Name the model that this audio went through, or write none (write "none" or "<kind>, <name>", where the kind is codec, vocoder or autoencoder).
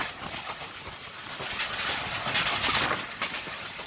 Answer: none